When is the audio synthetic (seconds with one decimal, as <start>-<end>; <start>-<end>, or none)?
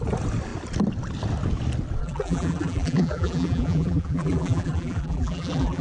2.0-5.8